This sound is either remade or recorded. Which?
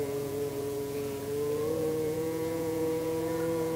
remade